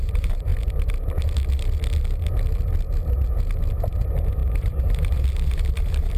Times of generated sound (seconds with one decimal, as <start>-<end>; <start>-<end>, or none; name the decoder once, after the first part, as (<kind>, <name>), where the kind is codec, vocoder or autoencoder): 0.0-0.5 (vocoder, BigVGAN v2); 3.8-6.2